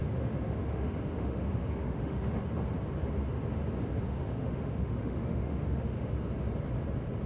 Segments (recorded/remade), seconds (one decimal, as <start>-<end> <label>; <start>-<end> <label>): 0.0-2.3 remade; 2.3-4.1 recorded; 4.1-6.1 remade; 6.1-7.3 recorded